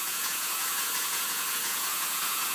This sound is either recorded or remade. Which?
remade